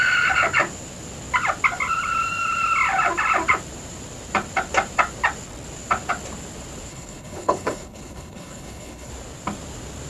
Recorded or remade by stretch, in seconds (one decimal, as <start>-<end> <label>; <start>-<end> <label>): 0.0-6.9 recorded; 6.9-9.1 remade; 9.1-10.1 recorded